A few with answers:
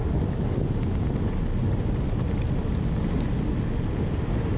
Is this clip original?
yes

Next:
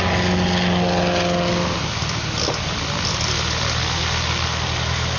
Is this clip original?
yes